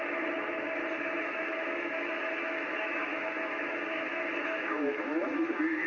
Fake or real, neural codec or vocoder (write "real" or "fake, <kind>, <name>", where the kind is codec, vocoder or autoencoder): fake, autoencoder, DAC-VAE